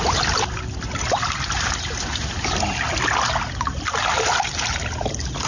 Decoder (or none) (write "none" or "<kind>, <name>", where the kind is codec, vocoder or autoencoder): none